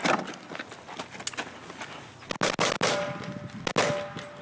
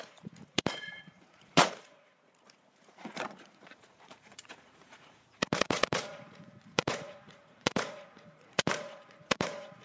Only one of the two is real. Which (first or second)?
first